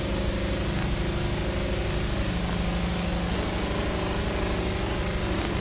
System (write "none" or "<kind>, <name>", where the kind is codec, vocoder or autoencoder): none